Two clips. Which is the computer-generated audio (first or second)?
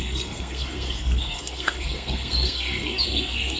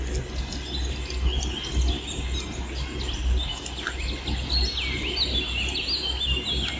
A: first